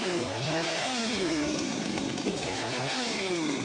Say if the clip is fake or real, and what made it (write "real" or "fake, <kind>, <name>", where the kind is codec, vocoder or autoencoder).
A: fake, codec, SNAC